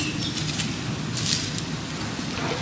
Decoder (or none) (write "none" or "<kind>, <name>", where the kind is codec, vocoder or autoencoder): none